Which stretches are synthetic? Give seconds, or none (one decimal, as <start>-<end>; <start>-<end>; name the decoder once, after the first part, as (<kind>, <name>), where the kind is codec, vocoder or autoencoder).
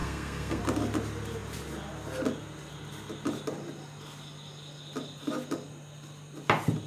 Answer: 0.0-0.6 (codec, SNAC)